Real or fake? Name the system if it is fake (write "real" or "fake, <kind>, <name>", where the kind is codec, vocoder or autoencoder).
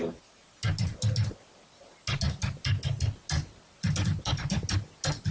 real